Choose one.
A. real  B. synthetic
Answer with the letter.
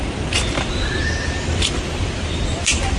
B